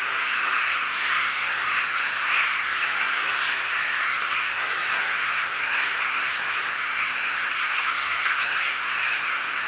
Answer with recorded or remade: remade